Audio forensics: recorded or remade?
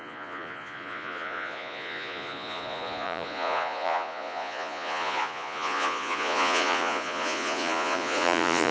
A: remade